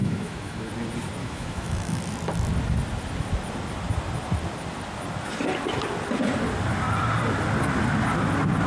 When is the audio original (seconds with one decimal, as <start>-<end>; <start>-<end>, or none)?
0.7-1.2; 2.0-8.7